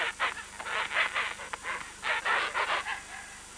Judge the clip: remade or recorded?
recorded